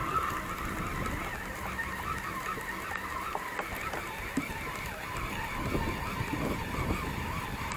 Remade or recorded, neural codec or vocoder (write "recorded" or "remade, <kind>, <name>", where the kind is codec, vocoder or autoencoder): recorded